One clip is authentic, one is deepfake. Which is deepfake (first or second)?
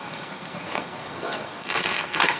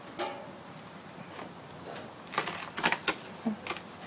first